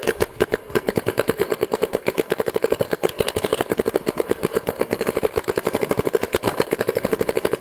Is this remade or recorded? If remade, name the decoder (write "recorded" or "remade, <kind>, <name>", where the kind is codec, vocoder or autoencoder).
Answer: remade, codec, SNAC